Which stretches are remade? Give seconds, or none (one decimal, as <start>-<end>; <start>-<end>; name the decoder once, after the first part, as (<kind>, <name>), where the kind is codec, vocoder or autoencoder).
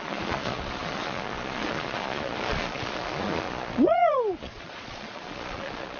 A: 0.0-6.0 (vocoder, Vocos)